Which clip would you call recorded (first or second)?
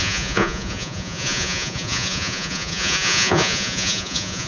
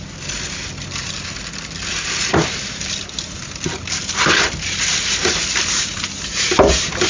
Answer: second